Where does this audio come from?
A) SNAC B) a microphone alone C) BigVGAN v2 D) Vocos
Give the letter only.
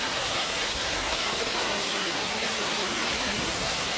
A